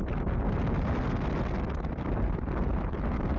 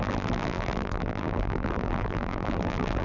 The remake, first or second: second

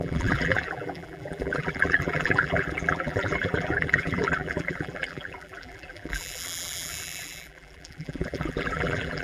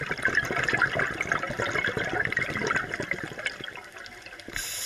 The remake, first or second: first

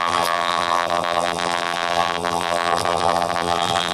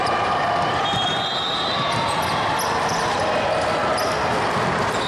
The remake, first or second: first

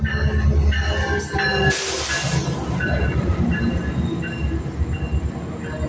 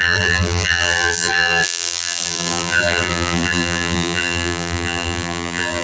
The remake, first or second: second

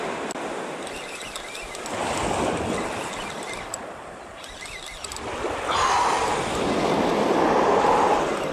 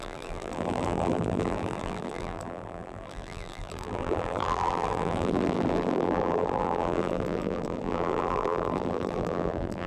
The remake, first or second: second